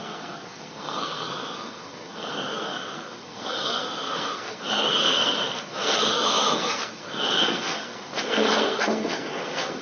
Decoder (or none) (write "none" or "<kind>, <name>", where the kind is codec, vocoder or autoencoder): codec, SNAC